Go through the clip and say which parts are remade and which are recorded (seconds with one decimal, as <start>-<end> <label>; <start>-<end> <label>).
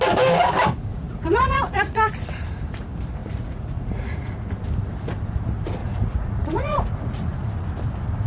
0.0-0.9 recorded; 0.9-2.1 remade; 2.1-3.2 recorded; 3.2-4.5 remade; 4.5-5.8 recorded; 5.8-7.5 remade; 7.5-8.3 recorded